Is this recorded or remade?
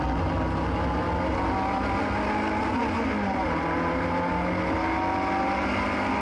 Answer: recorded